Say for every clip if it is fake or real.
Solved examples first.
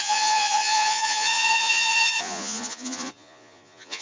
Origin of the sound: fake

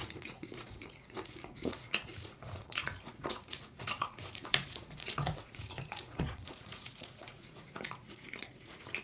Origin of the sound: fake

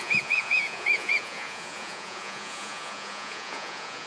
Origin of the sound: fake